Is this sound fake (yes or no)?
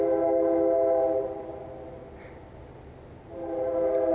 no